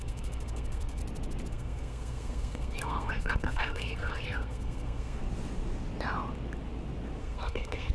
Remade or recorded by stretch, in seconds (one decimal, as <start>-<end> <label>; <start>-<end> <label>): 0.0-1.0 remade; 1.0-1.5 recorded; 1.5-5.2 remade; 5.2-7.2 recorded; 7.2-7.9 remade